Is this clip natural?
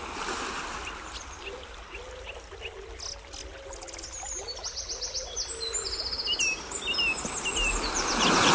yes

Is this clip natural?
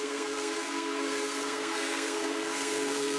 no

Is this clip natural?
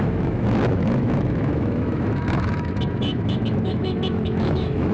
no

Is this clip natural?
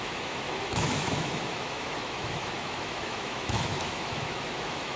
no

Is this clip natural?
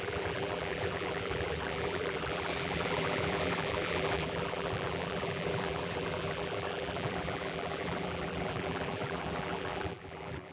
no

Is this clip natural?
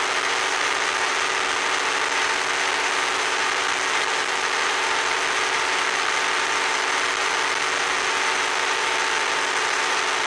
yes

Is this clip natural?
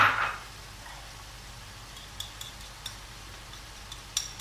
yes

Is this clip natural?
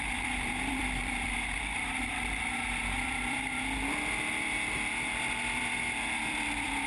no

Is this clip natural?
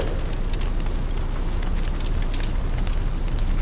yes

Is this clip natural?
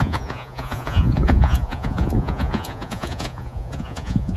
no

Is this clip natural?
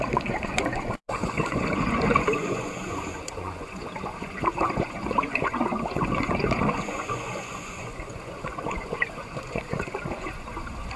no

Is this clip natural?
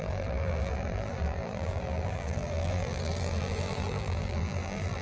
no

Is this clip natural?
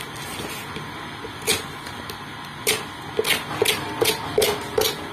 yes